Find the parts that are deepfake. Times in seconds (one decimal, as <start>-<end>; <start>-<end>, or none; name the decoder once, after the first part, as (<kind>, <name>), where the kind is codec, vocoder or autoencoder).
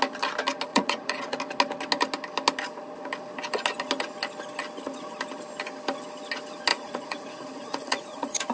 0.7-1.4 (vocoder, Vocos); 6.7-8.5